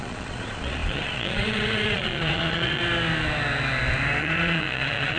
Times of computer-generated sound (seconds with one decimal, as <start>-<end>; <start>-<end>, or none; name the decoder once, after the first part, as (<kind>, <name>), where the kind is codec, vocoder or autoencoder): 0.0-2.8 (vocoder, Vocos); 4.2-5.2